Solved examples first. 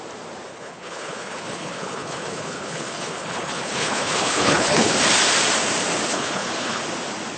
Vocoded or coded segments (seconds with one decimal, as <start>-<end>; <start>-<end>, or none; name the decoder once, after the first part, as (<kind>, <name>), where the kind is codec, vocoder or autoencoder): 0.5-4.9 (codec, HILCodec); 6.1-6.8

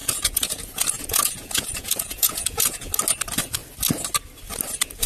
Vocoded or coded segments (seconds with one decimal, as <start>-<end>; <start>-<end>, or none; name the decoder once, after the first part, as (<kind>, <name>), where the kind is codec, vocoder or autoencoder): 0.0-2.9 (vocoder, Vocos)

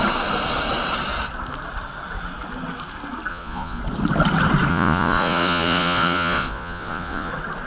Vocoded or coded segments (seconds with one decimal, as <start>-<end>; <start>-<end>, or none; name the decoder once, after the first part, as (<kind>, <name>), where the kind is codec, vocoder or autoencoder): 3.3-3.8 (vocoder, Vocos); 4.7-7.3

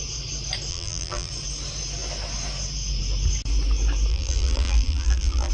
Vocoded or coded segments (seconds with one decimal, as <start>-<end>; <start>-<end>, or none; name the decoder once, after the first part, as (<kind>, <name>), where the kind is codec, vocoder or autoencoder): 0.7-1.3 (vocoder, BigVGAN v2); 4.1-5.5